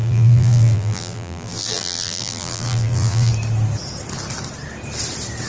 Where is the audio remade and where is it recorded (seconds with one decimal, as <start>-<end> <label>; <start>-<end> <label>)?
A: 0.0-3.3 remade; 3.3-5.5 recorded